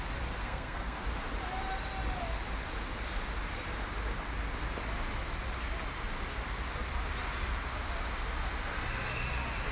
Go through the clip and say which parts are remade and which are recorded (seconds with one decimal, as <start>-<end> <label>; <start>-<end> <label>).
0.0-0.4 recorded; 0.4-1.0 remade; 1.0-9.7 recorded